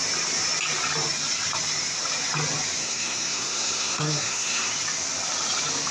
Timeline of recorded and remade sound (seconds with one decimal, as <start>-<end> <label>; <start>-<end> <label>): 0.0-2.8 recorded; 2.8-4.7 remade; 4.7-5.9 recorded